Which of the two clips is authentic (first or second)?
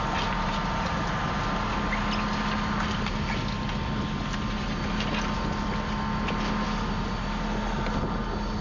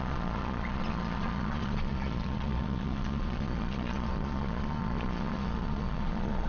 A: first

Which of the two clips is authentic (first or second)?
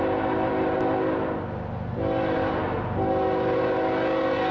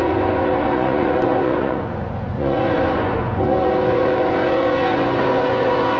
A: first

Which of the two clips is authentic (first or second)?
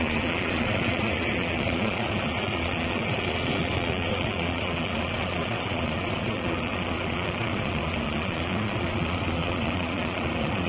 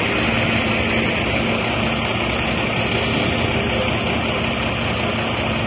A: second